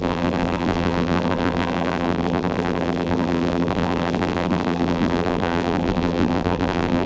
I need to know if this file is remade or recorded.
remade